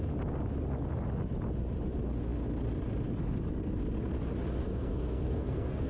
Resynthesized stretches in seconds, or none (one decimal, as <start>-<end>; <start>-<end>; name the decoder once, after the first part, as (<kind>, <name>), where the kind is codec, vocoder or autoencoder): 4.6-5.9 (codec, SNAC)